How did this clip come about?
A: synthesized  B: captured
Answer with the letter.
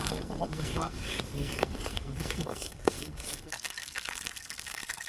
A